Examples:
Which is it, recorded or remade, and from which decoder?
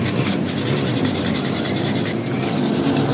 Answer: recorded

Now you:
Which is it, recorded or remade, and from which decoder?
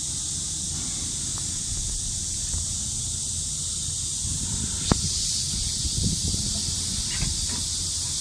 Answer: recorded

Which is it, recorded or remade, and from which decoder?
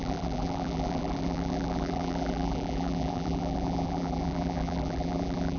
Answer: remade, vocoder, BigVGAN v2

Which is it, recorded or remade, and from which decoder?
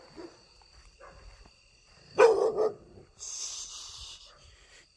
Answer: remade, vocoder, BigVGAN v2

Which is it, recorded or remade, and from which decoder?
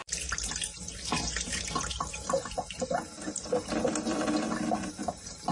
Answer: remade, vocoder, BigVGAN v2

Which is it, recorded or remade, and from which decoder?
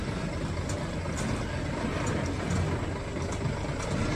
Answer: recorded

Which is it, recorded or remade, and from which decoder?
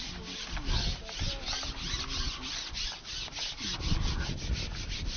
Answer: recorded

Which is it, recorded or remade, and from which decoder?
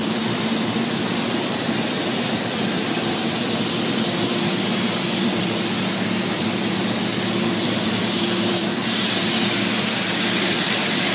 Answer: remade, vocoder, BigVGAN v2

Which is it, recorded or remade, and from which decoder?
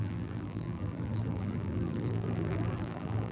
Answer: remade, vocoder, BigVGAN v2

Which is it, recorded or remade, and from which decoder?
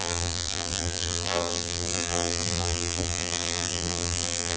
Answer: remade, vocoder, BigVGAN v2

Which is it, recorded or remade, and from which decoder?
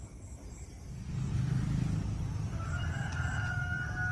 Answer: recorded